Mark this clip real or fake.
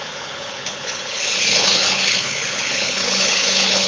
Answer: fake